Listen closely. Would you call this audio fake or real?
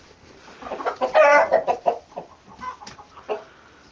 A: real